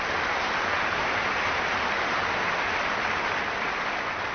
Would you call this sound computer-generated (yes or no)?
no